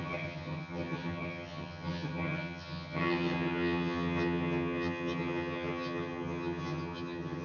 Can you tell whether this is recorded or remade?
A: remade